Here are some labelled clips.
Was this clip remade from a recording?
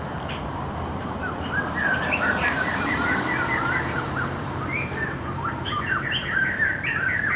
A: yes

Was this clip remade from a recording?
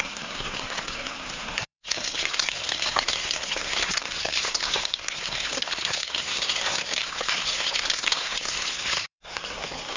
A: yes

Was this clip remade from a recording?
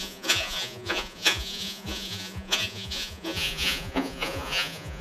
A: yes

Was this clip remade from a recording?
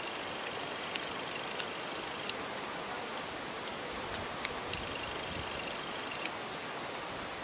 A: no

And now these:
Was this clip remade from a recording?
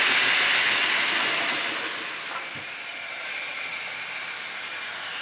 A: no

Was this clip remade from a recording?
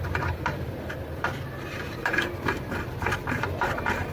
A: yes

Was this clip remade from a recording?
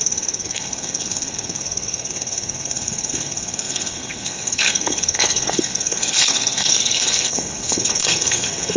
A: yes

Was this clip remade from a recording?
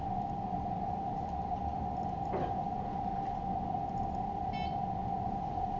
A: yes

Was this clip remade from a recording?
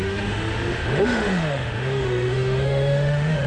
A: yes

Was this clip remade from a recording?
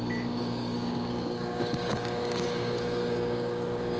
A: yes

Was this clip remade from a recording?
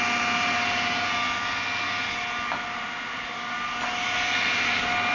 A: no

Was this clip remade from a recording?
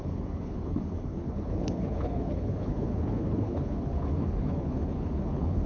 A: yes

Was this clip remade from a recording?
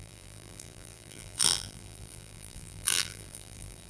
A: yes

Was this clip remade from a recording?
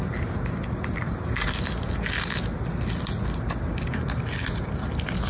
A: no